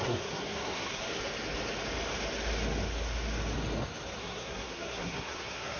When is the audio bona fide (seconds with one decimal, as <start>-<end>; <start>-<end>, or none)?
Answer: 1.0-4.2